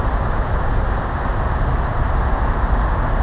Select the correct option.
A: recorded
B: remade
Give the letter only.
A